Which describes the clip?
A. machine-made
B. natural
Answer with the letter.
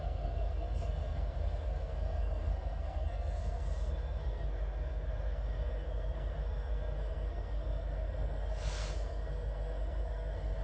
A